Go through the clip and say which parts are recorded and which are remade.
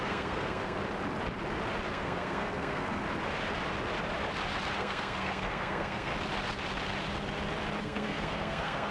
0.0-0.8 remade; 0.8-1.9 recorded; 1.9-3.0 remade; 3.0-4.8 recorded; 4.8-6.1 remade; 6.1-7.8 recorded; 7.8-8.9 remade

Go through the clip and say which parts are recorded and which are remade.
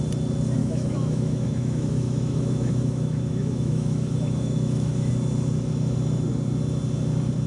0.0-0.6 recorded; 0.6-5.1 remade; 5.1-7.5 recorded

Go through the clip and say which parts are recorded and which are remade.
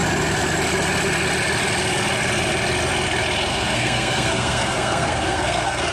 0.0-3.5 recorded; 3.5-5.9 remade